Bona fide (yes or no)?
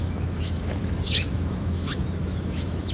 no